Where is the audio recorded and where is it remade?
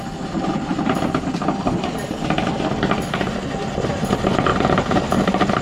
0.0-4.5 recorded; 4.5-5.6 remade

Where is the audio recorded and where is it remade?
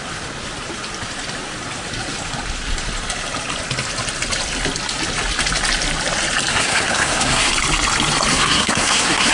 0.0-6.5 recorded; 6.5-7.5 remade; 7.5-8.3 recorded; 8.3-9.3 remade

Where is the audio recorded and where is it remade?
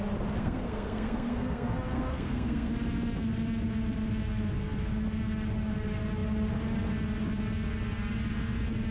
0.0-0.4 recorded; 0.4-2.7 remade; 2.7-8.9 recorded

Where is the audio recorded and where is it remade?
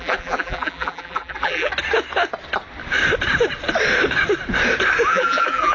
0.0-1.7 remade; 1.7-5.1 recorded; 5.1-5.7 remade